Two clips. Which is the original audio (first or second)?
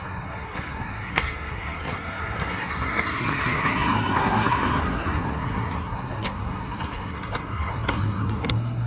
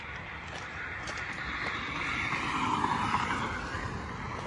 second